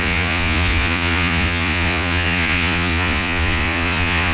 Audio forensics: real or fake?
fake